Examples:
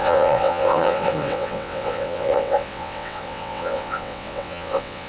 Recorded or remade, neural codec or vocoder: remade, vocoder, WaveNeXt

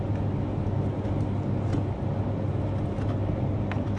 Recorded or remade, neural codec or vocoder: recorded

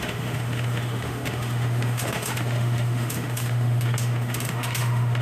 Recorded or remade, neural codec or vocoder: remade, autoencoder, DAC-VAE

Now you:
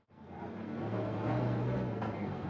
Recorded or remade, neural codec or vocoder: remade, codec, SNAC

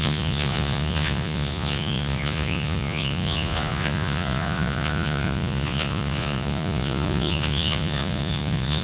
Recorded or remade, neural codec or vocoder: remade, vocoder, Vocos